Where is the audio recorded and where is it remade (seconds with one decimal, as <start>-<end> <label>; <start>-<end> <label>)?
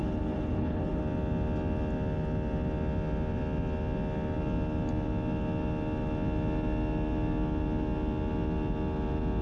0.0-1.0 remade; 1.0-9.4 recorded